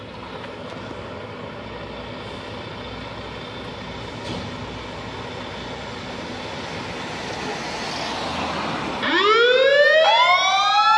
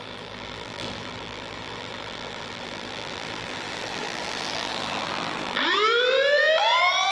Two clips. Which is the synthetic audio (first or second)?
second